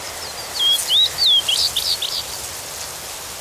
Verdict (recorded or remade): recorded